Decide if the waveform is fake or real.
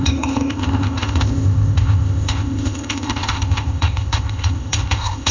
fake